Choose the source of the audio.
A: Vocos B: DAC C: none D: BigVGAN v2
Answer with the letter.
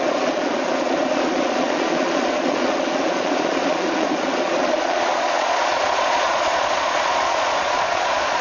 A